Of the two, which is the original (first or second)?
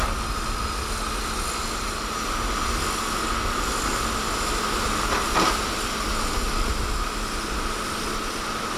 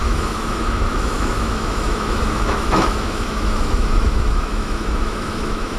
first